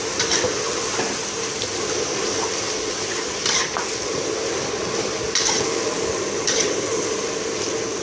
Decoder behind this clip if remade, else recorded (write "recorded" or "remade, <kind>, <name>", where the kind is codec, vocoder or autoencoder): recorded